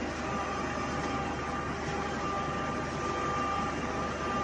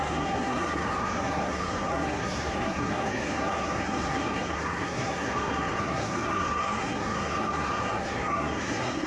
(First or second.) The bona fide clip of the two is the first